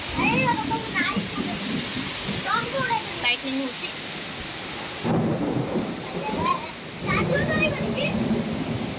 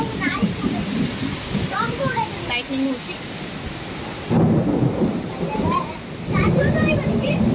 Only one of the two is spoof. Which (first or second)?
second